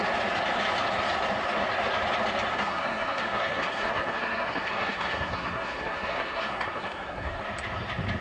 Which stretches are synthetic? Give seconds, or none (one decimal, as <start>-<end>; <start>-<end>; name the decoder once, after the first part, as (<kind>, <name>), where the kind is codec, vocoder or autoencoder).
2.5-7.4 (codec, SNAC)